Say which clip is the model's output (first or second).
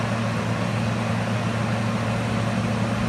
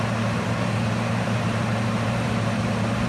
second